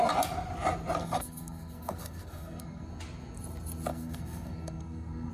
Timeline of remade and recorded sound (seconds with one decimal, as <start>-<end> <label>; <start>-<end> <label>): 0.0-1.0 recorded; 1.0-2.9 remade; 2.9-3.9 recorded; 3.9-5.3 remade